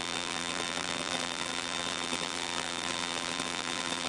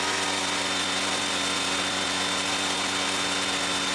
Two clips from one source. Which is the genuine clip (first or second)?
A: second